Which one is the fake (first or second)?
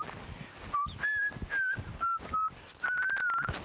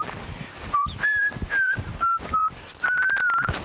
second